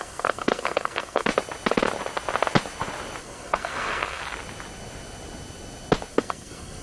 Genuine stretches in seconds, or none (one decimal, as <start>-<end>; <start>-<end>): 1.3-3.2; 4.2-6.1